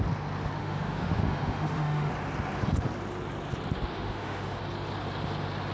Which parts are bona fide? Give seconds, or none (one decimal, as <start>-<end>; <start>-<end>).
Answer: 0.0-0.6; 2.1-3.9; 4.6-5.7